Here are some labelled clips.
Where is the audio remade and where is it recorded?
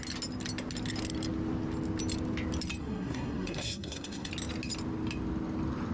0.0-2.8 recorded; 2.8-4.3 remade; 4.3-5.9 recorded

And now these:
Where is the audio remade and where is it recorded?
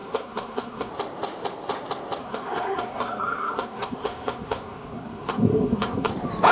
0.0-0.9 remade; 0.9-2.2 recorded; 2.2-6.1 remade; 6.1-6.5 recorded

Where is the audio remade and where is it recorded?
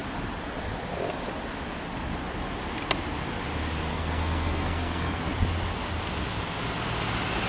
0.0-3.9 recorded; 3.9-5.2 remade; 5.2-7.5 recorded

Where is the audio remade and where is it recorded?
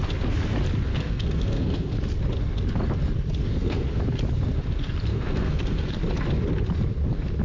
0.0-0.9 recorded; 0.9-2.0 remade; 2.0-3.4 recorded; 3.4-4.0 remade; 4.0-5.1 recorded; 5.1-5.9 remade; 5.9-7.4 recorded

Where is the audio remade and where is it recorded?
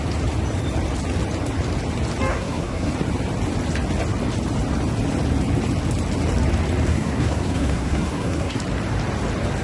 0.0-2.3 recorded; 2.3-2.9 remade; 2.9-6.9 recorded; 6.9-8.6 remade; 8.6-9.6 recorded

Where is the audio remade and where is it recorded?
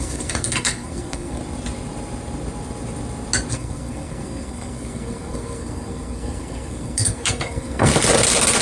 0.0-1.4 remade; 1.4-3.5 recorded; 3.5-7.9 remade; 7.9-8.6 recorded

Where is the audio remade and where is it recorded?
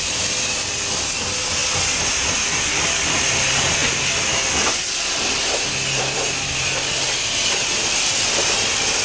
0.0-9.0 recorded